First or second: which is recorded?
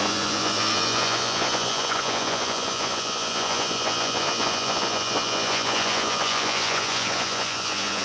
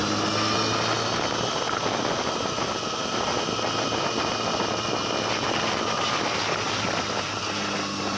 second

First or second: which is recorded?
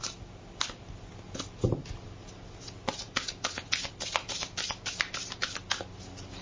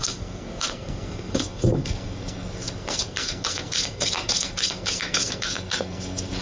first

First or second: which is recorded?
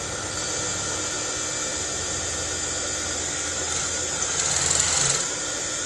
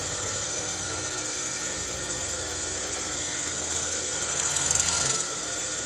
first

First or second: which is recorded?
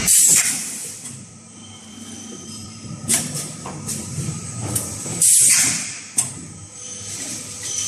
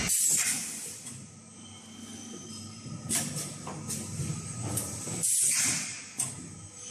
second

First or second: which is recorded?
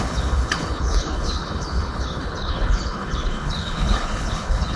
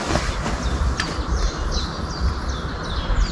second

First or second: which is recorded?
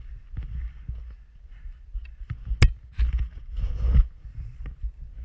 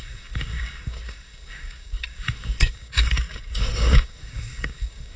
first